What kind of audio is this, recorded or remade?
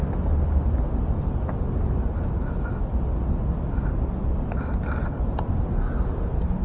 recorded